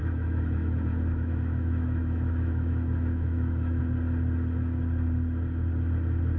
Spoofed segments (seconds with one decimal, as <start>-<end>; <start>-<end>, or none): 0.0-3.8